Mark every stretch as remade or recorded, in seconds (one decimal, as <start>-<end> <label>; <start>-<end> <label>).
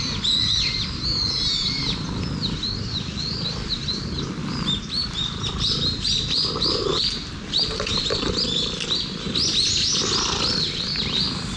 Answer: 0.0-5.0 recorded; 5.0-7.0 remade; 7.0-11.6 recorded